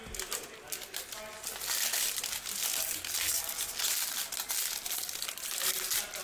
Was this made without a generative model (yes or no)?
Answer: yes